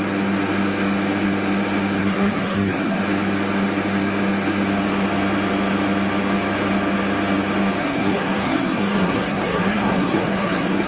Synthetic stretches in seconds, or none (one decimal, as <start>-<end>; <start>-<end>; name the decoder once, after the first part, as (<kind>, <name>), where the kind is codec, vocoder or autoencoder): 2.0-3.0 (codec, SNAC); 7.8-10.9